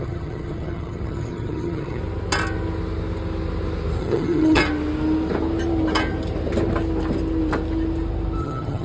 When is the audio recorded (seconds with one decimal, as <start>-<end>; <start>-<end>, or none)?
2.0-4.0; 4.6-8.4